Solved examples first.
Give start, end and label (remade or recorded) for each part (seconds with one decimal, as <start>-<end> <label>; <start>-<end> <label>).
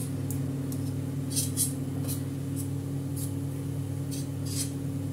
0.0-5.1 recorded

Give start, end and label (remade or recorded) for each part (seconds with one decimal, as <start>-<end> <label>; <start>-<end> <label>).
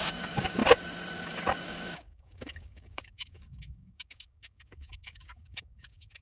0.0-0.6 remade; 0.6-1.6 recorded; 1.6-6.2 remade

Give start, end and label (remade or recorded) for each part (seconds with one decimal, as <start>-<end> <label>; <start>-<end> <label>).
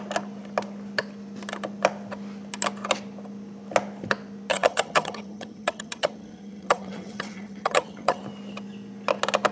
0.0-4.5 recorded; 4.5-8.2 remade; 8.2-9.5 recorded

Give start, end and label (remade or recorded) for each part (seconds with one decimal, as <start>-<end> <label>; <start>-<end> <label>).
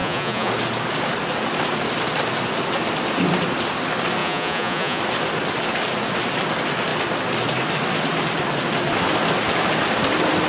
0.0-0.5 remade; 0.5-4.2 recorded; 4.2-5.0 remade; 5.0-10.5 recorded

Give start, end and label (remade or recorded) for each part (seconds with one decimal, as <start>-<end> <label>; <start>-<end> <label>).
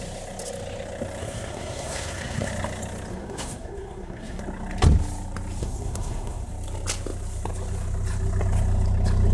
0.0-1.2 recorded; 1.2-2.5 remade; 2.5-3.1 recorded; 3.1-4.4 remade; 4.4-5.6 recorded; 5.6-6.5 remade; 6.5-9.3 recorded